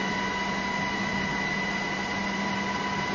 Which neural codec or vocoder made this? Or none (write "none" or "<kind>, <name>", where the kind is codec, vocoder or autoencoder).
none